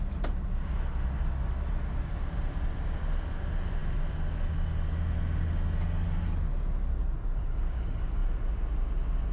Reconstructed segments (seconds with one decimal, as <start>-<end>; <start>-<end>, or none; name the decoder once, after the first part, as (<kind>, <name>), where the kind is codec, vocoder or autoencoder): none